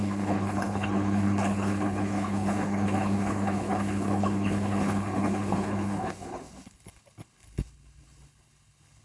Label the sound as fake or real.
fake